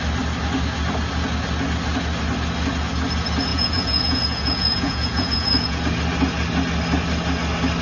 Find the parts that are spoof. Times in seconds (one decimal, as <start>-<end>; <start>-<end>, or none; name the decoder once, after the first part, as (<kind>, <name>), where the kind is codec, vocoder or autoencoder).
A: 3.5-5.8 (vocoder, Vocos)